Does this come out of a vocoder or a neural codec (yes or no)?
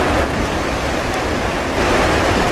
yes